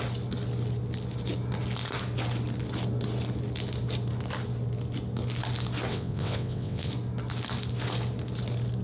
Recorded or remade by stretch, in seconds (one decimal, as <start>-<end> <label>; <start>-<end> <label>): 0.0-5.9 recorded; 5.9-6.9 remade; 6.9-8.8 recorded